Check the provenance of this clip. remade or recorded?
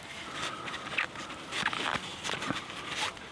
recorded